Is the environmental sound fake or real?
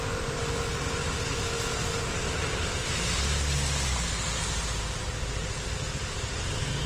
real